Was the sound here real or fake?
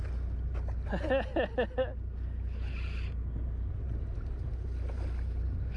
real